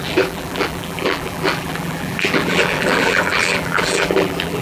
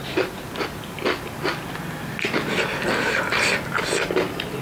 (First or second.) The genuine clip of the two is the second